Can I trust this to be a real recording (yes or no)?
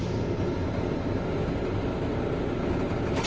yes